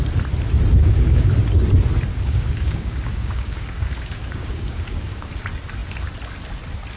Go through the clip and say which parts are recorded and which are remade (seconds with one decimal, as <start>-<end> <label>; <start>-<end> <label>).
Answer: 0.0-0.8 recorded; 0.8-1.3 remade; 1.3-2.1 recorded; 2.1-5.3 remade; 5.3-7.0 recorded